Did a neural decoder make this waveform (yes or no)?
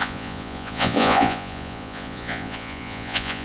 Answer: yes